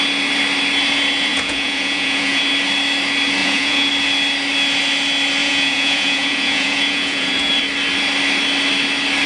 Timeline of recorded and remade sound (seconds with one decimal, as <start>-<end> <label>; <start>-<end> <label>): 0.0-1.3 recorded; 1.3-2.4 remade; 2.4-3.4 recorded; 3.4-3.9 remade; 3.9-5.4 recorded; 5.4-7.5 remade; 7.5-9.3 recorded